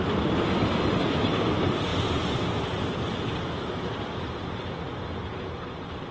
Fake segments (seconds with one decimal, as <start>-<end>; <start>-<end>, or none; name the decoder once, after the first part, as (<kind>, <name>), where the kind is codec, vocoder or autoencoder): none